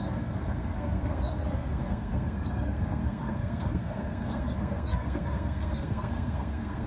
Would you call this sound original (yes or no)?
no